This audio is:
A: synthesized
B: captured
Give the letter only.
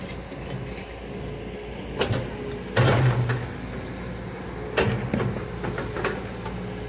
B